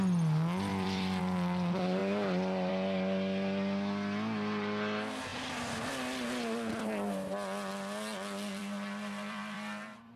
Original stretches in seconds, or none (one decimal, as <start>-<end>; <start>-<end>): 0.0-0.7; 1.2-8.6